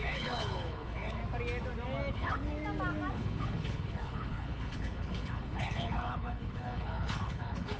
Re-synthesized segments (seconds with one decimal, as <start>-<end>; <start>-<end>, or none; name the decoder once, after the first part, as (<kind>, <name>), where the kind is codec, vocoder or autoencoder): 0.0-1.2 (codec, HILCodec); 2.1-2.5; 3.1-7.8